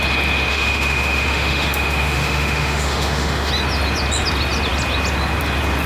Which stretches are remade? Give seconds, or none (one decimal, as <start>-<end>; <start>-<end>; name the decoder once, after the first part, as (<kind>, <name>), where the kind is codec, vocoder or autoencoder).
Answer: 0.5-3.5 (autoencoder, DAC-VAE)